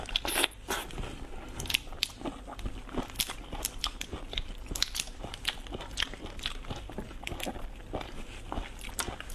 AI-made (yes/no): yes